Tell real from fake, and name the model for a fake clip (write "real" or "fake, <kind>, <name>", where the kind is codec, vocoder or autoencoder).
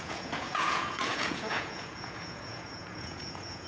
fake, vocoder, Vocos